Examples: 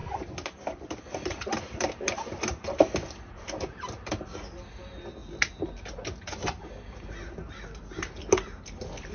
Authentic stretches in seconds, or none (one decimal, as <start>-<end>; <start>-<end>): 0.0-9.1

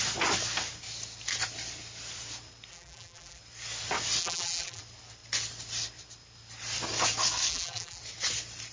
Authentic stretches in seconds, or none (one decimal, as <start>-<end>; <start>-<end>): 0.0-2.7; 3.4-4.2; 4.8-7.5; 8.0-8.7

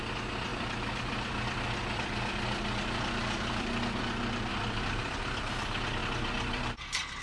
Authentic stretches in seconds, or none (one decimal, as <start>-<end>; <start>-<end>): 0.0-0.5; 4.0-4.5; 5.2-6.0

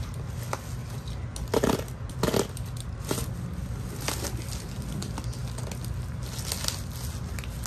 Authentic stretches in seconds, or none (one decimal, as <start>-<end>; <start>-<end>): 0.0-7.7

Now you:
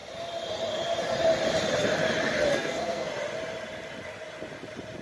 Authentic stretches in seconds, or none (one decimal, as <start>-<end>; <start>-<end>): 0.0-2.5; 3.1-5.0

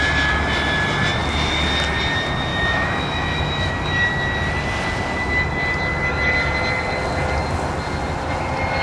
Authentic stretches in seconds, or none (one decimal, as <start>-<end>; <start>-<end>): 0.0-2.5; 3.7-8.8

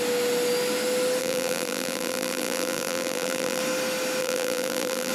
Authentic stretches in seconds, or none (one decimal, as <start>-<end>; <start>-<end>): 0.0-1.2; 3.6-4.2